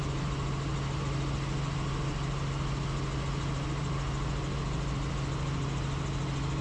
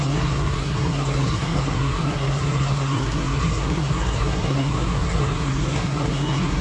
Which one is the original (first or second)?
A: first